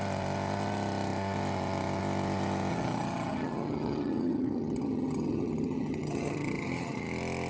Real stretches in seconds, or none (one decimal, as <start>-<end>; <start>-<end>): 0.0-2.7; 7.0-7.5